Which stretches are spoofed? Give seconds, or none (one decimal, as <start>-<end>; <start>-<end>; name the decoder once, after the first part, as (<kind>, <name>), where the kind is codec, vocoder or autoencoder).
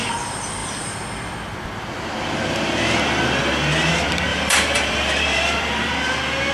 4.3-5.9 (vocoder, BigVGAN v2)